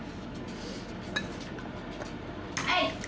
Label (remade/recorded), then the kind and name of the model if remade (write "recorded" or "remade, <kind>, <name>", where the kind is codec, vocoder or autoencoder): recorded